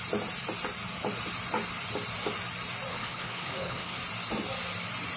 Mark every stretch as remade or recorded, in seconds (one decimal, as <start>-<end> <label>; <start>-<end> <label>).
0.0-2.9 recorded; 2.9-4.0 remade; 4.0-5.2 recorded